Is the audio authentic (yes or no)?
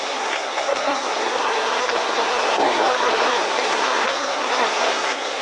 no